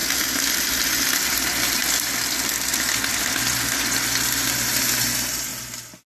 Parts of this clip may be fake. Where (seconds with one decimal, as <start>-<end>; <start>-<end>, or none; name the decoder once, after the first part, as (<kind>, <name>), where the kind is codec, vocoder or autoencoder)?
none